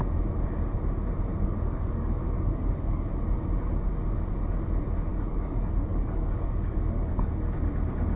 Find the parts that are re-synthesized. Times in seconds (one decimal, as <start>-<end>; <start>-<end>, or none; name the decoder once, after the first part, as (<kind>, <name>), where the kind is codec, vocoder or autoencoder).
1.3-3.1 (codec, DAC); 5.1-7.3